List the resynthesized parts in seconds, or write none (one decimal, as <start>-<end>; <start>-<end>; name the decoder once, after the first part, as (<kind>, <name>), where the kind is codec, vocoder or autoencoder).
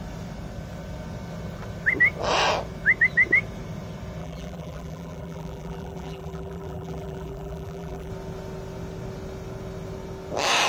4.2-8.1 (vocoder, BigVGAN v2)